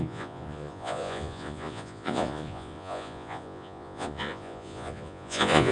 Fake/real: fake